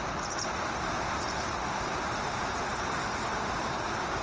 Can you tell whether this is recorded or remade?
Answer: recorded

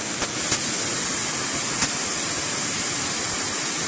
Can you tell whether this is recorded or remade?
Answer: recorded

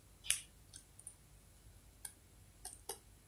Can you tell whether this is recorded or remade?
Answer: recorded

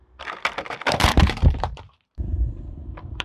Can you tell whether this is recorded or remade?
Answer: remade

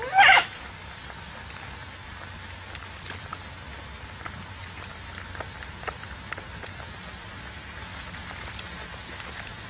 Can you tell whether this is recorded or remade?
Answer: recorded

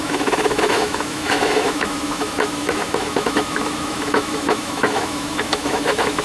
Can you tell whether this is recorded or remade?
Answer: remade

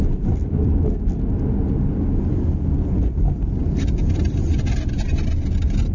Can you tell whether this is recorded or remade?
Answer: recorded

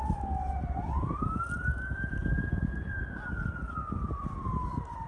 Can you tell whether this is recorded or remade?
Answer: recorded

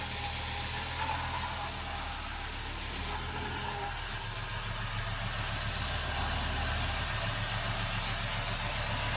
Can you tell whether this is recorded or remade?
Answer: recorded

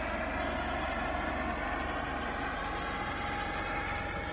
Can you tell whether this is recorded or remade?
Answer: recorded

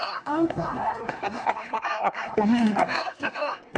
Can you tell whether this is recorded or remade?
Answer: remade